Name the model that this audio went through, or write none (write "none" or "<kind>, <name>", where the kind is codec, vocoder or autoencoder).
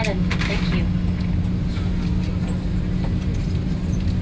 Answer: none